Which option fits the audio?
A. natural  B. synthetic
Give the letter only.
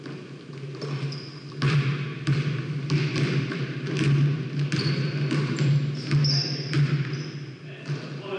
A